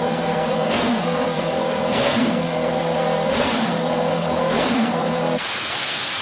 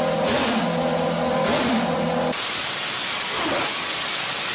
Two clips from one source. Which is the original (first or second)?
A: second